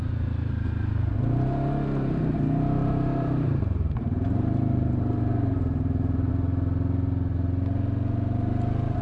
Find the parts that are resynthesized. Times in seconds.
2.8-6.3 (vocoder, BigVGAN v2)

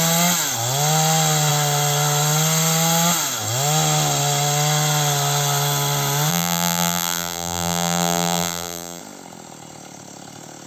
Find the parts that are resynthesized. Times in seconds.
6.3-9.0 (vocoder, BigVGAN v2)

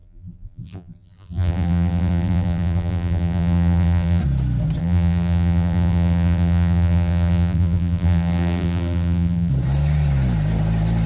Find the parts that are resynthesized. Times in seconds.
0.0-4.2 (vocoder, BigVGAN v2); 4.8-9.5

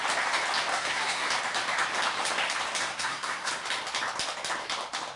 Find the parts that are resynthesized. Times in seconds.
0.7-1.3 (codec, SNAC); 2.8-3.5

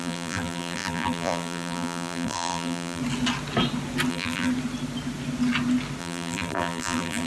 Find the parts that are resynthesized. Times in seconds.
0.0-3.0 (vocoder, BigVGAN v2); 4.1-4.5; 6.0-7.3